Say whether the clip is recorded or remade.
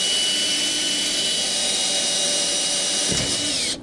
remade